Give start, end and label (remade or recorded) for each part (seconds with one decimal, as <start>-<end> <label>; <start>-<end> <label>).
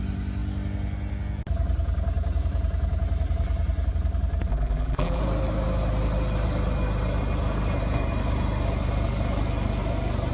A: 0.0-4.5 recorded; 4.5-5.2 remade; 5.2-10.3 recorded